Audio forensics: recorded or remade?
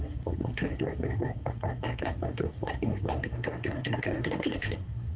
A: remade